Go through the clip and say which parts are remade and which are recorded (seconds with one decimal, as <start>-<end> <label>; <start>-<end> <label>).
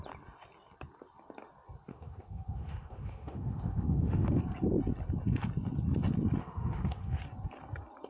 0.0-1.9 recorded; 1.9-4.4 remade; 4.4-6.4 recorded; 6.4-7.2 remade; 7.2-8.1 recorded